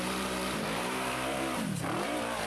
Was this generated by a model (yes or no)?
yes